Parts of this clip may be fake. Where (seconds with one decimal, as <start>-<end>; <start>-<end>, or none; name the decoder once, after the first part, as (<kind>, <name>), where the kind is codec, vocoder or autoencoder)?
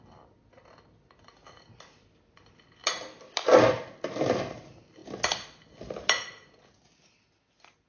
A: none